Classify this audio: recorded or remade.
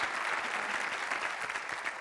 recorded